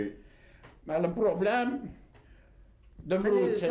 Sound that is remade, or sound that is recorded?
recorded